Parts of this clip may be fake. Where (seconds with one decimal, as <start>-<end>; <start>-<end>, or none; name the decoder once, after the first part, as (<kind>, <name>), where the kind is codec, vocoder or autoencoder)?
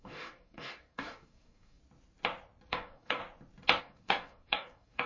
0.0-1.8 (codec, DAC); 2.7-3.2; 3.8-5.1